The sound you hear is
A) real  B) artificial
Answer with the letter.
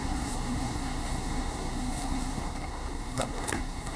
B